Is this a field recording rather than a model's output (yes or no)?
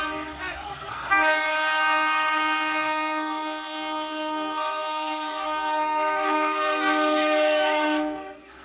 no